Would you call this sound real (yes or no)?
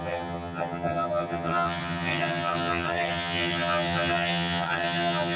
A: no